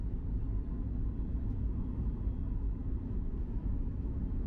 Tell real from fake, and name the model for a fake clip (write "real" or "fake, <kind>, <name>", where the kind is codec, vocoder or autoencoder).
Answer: real